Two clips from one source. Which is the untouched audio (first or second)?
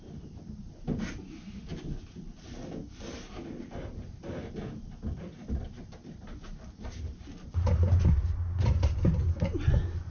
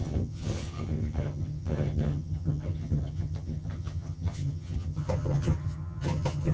first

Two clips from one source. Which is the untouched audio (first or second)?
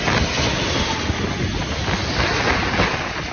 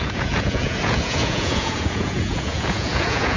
first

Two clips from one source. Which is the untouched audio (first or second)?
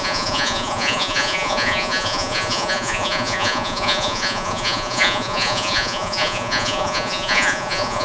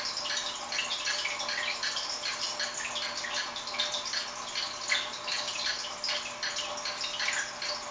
second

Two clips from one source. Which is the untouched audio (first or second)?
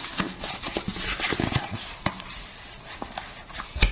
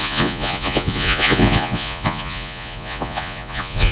first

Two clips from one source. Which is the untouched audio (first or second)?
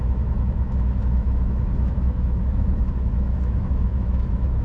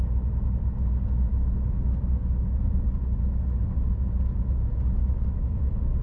second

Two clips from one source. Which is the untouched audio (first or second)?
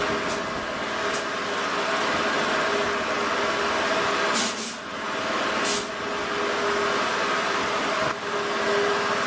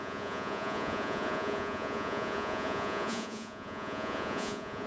first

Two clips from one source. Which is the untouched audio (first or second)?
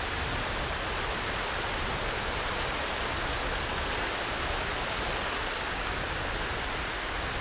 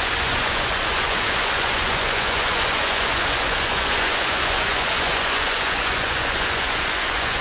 first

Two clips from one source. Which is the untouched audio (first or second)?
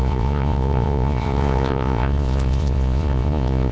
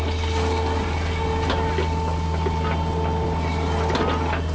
second